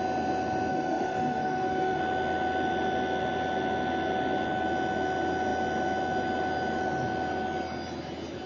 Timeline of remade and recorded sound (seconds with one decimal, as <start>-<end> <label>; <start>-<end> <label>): 0.0-0.7 recorded; 0.7-2.0 remade; 2.0-8.5 recorded